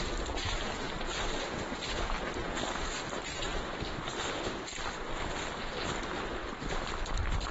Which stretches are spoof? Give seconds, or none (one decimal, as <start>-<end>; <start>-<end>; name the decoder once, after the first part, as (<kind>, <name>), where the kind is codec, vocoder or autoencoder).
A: none

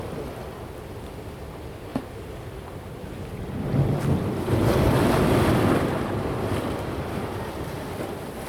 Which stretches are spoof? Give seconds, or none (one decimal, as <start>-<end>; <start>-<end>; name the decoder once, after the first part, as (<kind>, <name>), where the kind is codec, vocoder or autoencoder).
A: 0.0-1.9 (vocoder, BigVGAN v2); 3.5-8.5

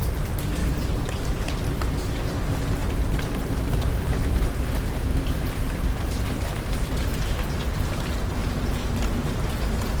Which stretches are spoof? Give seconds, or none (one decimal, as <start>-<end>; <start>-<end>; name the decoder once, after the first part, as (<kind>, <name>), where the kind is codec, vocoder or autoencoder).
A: 0.6-1.6 (vocoder, BigVGAN v2); 2.8-7.9; 8.4-9.5

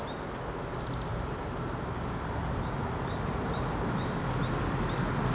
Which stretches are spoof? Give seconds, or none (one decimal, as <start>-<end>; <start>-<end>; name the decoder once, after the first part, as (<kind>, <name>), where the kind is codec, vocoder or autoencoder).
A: 1.1-4.2 (vocoder, BigVGAN v2)

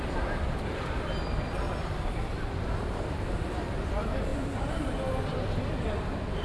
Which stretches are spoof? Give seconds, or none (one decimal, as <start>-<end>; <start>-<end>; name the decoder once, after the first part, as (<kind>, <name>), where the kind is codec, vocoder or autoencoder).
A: 0.0-4.3 (vocoder, BigVGAN v2); 5.2-6.4

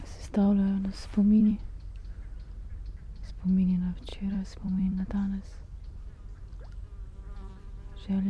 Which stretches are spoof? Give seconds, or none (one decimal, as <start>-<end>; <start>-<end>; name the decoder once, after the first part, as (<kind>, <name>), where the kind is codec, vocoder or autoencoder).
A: 1.4-3.3 (vocoder, BigVGAN v2); 4.1-5.1